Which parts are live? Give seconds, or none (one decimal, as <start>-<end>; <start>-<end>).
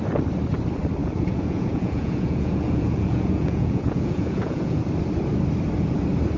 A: 0.0-1.0; 4.8-6.4